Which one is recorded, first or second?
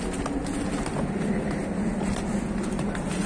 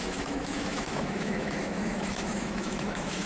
first